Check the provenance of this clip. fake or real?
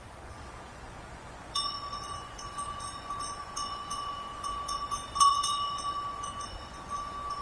fake